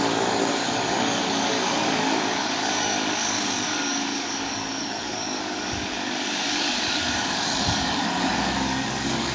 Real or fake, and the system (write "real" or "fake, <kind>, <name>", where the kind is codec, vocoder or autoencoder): fake, codec, DAC